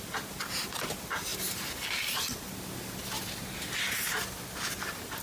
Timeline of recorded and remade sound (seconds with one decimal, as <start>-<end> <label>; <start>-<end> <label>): 0.0-5.2 recorded